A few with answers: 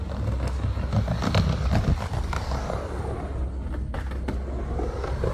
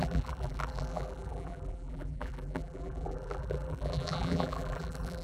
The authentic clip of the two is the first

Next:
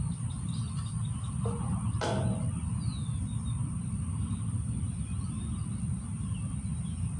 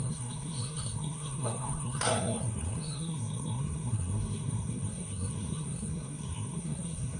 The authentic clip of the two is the first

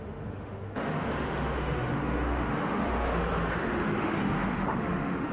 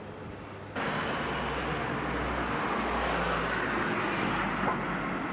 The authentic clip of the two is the second